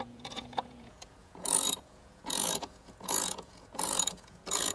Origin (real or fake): fake